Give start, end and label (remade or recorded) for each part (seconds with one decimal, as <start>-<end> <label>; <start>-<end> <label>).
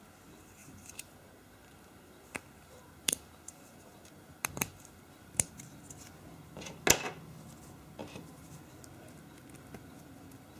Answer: 0.0-0.6 recorded; 0.6-5.5 remade; 5.5-8.0 recorded; 8.0-8.5 remade; 8.5-10.6 recorded